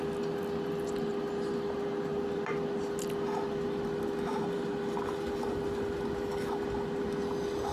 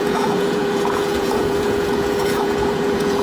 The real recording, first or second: first